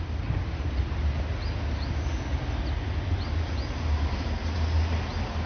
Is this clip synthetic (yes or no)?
no